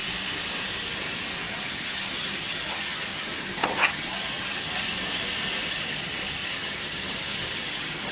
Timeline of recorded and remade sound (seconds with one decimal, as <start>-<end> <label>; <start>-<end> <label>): 0.0-1.5 recorded; 1.5-4.7 remade; 4.7-5.7 recorded; 5.7-8.1 remade